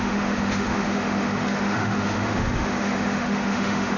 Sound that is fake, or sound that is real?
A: fake